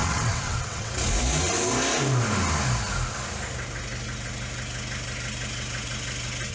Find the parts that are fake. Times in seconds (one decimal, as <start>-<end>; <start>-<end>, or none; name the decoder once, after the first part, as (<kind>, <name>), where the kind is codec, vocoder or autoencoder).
0.0-0.9 (vocoder, WaveNeXt)